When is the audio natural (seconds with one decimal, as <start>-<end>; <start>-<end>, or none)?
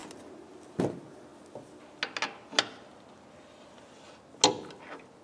0.0-5.2